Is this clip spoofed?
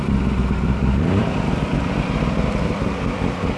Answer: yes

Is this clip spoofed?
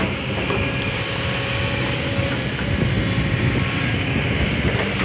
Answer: no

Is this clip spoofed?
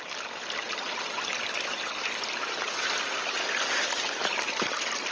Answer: no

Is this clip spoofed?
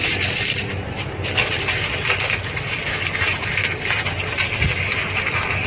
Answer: no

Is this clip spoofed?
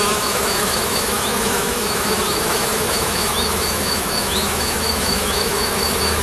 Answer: yes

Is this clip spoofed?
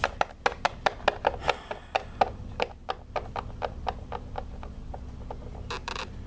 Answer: no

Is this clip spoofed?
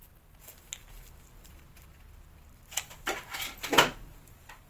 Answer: no